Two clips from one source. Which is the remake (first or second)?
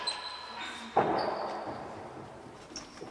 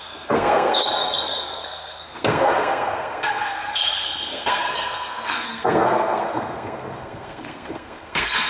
second